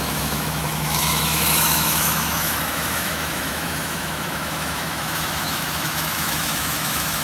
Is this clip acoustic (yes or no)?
no